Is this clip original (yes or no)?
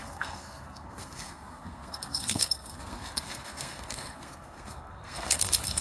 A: no